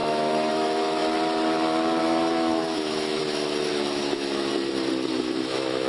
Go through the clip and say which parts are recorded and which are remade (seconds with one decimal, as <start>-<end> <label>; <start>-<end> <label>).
0.0-1.0 remade; 1.0-2.0 recorded; 2.0-3.2 remade; 3.2-3.7 recorded; 3.7-4.5 remade; 4.5-5.1 recorded; 5.1-5.9 remade